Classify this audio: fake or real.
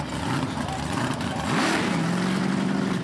real